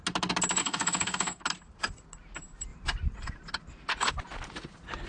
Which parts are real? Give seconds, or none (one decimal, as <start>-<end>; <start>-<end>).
0.0-0.6; 1.4-5.1